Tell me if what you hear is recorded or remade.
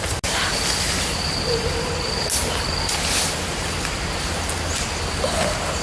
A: recorded